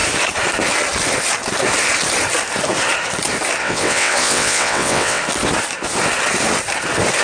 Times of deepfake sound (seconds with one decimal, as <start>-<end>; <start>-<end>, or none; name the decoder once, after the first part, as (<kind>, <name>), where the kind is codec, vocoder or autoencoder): 3.6-5.2 (vocoder, WaveNeXt)